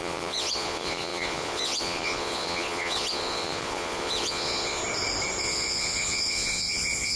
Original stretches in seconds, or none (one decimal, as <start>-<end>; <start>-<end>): 4.8-5.4